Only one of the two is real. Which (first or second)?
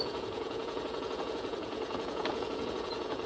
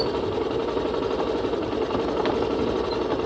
second